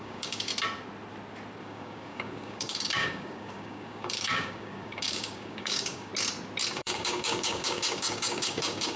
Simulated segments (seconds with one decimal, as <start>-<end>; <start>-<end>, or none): 0.0-0.5; 1.6-6.1; 6.7-9.0